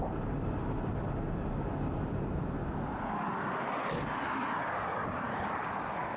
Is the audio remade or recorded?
recorded